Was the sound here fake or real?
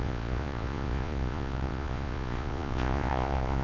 fake